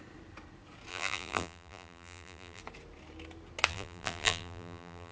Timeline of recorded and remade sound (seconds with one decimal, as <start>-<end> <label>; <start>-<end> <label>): 0.0-0.9 recorded; 0.9-2.6 remade; 2.6-3.7 recorded; 3.7-5.1 remade